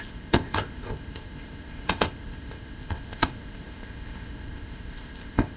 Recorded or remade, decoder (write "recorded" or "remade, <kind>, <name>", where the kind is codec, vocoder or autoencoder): remade, codec, ZipCodec